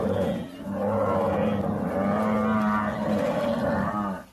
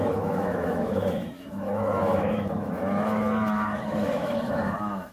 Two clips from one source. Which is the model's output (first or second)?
second